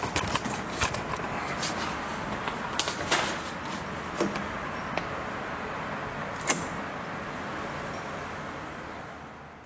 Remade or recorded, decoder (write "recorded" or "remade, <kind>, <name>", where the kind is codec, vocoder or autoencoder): recorded